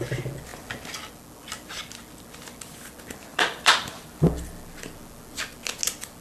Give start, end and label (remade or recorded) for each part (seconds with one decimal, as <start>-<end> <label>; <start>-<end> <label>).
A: 0.0-0.5 recorded; 0.5-1.1 remade; 1.1-3.3 recorded; 3.3-4.2 remade; 4.2-6.2 recorded

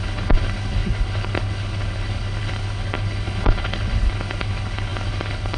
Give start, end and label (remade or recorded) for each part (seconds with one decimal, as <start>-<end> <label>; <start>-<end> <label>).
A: 0.0-5.6 remade

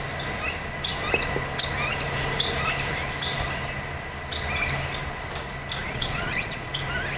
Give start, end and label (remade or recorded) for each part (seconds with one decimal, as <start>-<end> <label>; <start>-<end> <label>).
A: 0.0-5.8 recorded; 5.8-6.7 remade; 6.7-7.2 recorded

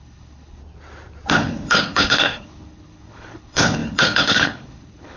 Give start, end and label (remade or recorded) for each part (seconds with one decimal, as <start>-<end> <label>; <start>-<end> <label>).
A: 0.0-0.6 remade; 0.6-1.3 recorded; 1.3-5.2 remade